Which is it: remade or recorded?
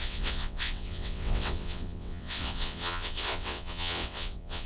remade